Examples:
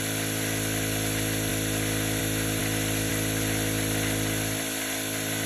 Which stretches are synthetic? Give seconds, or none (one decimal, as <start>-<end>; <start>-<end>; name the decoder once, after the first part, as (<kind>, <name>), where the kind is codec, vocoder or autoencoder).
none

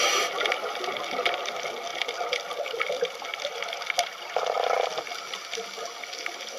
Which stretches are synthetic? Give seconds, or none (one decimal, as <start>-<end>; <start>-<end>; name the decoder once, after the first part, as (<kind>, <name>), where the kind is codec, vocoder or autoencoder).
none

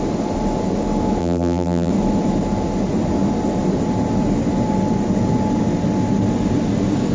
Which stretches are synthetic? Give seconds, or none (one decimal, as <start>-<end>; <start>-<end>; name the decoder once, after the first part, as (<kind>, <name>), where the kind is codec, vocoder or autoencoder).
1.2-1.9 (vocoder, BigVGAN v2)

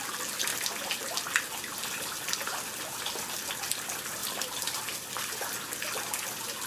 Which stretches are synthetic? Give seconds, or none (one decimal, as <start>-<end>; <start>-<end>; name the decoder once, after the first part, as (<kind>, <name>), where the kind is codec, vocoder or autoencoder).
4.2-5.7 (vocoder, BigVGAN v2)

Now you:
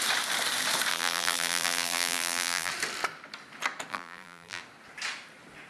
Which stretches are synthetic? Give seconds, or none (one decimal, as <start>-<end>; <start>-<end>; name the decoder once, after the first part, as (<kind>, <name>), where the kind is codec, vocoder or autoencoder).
0.9-2.7 (vocoder, BigVGAN v2); 3.9-4.6

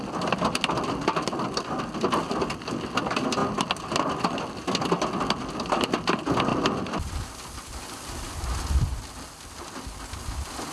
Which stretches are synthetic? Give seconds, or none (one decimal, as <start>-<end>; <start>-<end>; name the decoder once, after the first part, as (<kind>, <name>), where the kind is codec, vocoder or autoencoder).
6.5-8.3 (vocoder, BigVGAN v2)